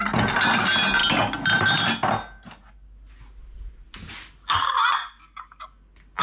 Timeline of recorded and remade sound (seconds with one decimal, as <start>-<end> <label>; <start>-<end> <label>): 0.0-6.2 recorded